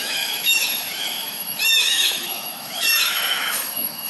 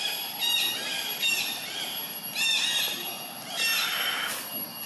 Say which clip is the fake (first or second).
first